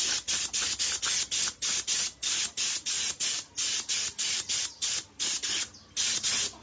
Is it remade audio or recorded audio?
recorded